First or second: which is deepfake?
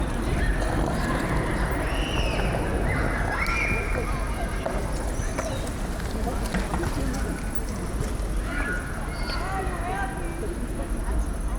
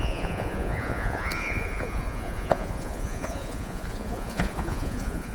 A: second